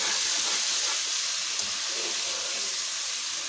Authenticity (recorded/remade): recorded